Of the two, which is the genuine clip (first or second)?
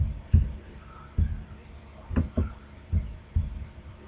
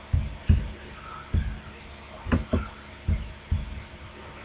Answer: second